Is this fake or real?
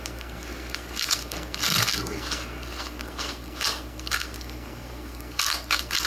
fake